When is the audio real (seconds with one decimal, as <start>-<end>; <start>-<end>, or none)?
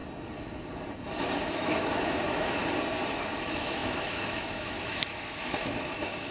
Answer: 0.0-1.4; 2.6-3.4